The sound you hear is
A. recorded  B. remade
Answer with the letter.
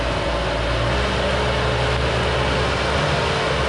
A